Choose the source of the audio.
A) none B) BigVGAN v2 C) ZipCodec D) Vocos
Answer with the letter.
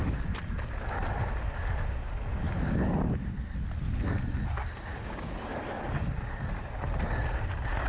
A